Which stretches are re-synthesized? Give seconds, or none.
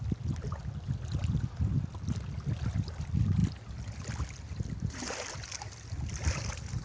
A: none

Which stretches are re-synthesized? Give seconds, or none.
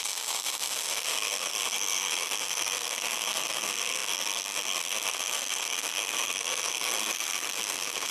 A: 0.0-8.1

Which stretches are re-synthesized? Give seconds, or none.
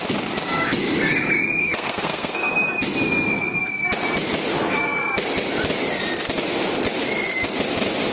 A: 1.6-2.5